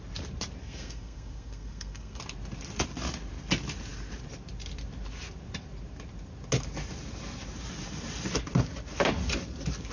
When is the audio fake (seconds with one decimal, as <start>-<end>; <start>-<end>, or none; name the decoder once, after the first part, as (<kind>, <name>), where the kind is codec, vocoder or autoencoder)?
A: 0.6-2.2 (codec, SNAC)